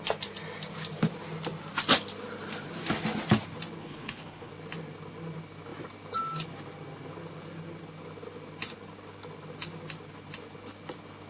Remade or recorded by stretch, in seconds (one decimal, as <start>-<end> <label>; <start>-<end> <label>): 0.0-3.8 recorded; 3.8-4.5 remade; 4.5-11.3 recorded